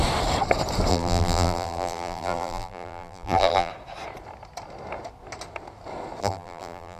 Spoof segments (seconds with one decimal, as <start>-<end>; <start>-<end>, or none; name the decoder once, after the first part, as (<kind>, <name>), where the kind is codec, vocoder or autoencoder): 0.9-3.7 (vocoder, BigVGAN v2); 6.2-7.0